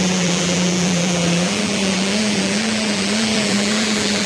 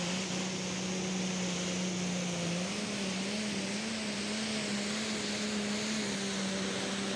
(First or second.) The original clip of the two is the second